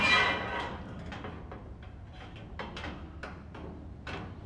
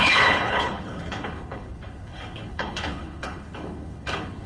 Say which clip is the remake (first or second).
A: second